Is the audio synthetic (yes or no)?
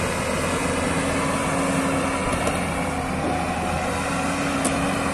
no